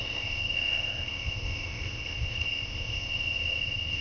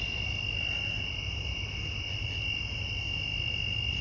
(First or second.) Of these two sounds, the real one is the second